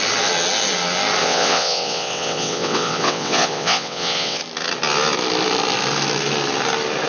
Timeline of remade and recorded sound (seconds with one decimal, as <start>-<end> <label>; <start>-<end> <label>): 0.0-1.2 recorded; 1.2-4.4 remade; 4.4-7.1 recorded